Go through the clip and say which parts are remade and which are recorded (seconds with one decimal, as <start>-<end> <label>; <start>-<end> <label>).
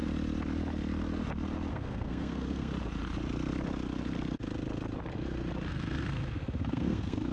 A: 0.0-1.7 recorded; 1.7-2.7 remade; 2.7-5.7 recorded; 5.7-7.3 remade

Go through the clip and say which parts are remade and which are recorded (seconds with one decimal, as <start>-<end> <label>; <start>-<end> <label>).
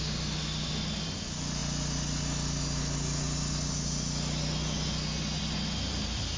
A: 0.0-6.4 recorded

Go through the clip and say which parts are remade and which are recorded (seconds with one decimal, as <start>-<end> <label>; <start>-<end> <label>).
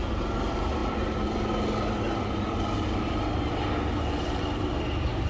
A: 0.0-5.3 recorded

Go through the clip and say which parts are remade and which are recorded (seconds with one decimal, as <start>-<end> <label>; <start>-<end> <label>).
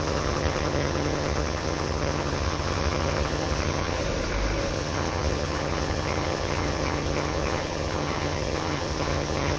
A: 0.0-4.0 remade; 4.0-4.7 recorded; 4.7-9.6 remade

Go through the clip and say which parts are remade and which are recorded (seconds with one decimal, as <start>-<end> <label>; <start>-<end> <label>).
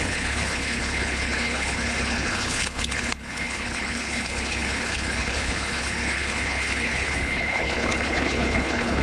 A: 0.0-9.0 remade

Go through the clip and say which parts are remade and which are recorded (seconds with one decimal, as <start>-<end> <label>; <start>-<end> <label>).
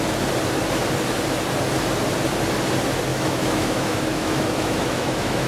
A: 0.0-3.1 recorded; 3.1-5.5 remade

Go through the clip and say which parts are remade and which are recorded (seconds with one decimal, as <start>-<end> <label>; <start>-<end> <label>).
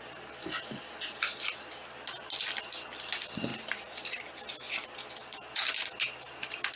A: 0.0-3.5 recorded; 3.5-5.5 remade; 5.5-6.8 recorded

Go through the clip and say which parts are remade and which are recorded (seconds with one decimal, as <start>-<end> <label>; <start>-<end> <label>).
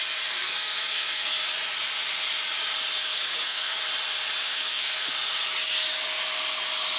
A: 0.0-0.4 recorded; 0.4-1.4 remade; 1.4-3.0 recorded; 3.0-3.8 remade; 3.8-4.4 recorded; 4.4-5.1 remade; 5.1-7.0 recorded